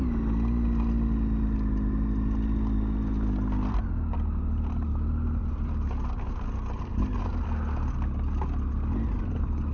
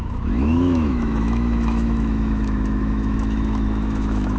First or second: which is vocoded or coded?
second